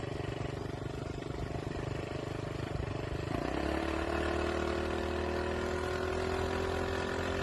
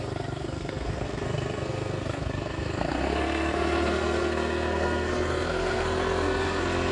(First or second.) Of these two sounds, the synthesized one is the second